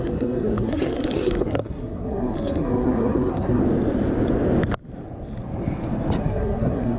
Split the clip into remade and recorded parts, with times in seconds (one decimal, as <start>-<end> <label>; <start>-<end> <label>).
0.0-3.6 remade; 3.6-6.2 recorded; 6.2-7.0 remade